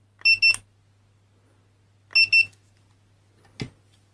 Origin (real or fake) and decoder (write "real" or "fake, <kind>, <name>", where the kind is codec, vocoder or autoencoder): real